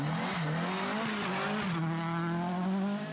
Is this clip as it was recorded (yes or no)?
yes